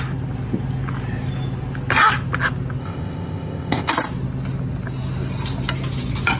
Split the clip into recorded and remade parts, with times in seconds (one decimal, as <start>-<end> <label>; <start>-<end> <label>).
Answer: 0.0-2.8 recorded; 2.8-3.9 remade; 3.9-6.4 recorded